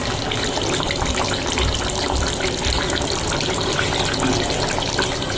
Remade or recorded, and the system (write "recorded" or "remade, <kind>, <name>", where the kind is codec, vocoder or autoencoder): recorded